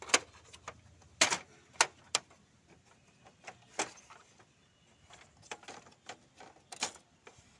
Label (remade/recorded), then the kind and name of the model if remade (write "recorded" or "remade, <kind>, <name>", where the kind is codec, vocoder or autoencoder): recorded